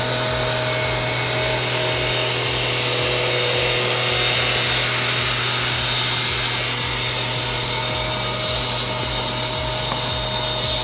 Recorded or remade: recorded